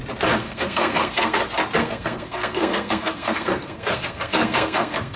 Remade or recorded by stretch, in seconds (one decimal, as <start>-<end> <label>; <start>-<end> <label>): 0.0-0.4 recorded; 0.4-1.4 remade; 1.4-1.8 recorded; 1.8-5.2 remade